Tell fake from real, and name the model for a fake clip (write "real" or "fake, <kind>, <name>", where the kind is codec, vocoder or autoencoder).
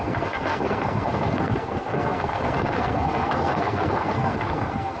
fake, codec, SNAC